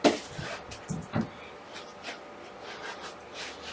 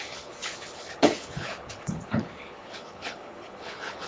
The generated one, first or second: second